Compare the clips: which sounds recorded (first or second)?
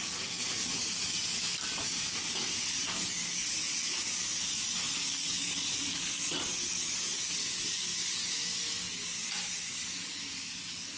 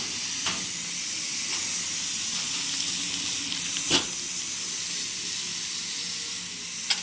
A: second